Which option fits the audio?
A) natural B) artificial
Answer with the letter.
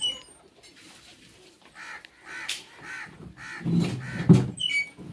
A